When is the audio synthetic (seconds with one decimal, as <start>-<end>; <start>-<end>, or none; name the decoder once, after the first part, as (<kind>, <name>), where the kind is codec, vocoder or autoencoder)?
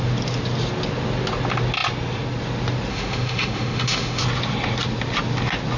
2.9-4.2 (autoencoder, DAC-VAE)